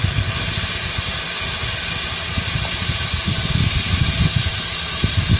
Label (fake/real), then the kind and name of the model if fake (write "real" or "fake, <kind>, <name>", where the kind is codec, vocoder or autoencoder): real